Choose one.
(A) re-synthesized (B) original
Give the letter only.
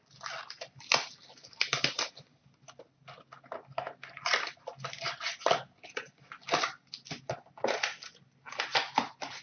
B